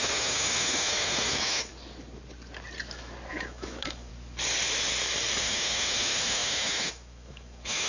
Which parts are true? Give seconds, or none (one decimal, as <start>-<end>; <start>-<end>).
1.7-3.3; 4.1-5.4